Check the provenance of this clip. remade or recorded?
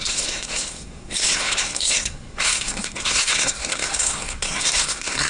remade